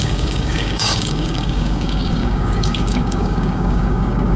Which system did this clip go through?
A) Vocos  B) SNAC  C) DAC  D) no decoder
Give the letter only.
C